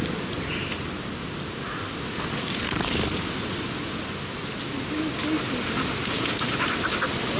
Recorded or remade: recorded